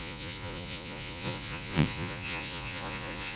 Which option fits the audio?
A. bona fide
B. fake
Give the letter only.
B